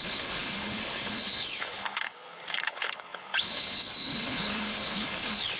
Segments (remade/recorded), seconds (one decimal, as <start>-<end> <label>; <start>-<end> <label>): 0.0-5.6 remade